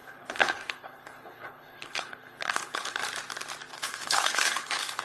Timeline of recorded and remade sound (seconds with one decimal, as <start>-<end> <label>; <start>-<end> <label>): 0.0-3.0 remade; 3.0-3.7 recorded; 3.7-5.0 remade